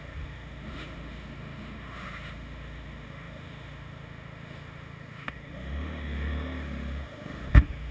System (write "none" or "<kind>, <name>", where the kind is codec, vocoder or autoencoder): autoencoder, DAC-VAE